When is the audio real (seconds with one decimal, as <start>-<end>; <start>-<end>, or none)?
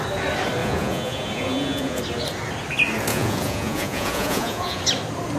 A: 0.0-0.6; 2.0-3.1; 4.8-5.4